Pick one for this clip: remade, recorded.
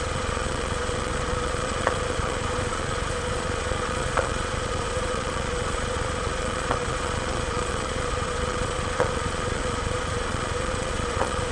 remade